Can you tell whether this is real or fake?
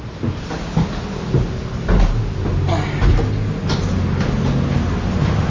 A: real